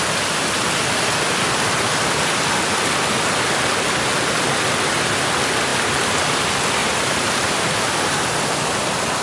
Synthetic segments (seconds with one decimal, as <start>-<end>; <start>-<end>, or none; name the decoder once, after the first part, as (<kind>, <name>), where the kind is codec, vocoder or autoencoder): 6.8-7.7 (vocoder, BigVGAN v2)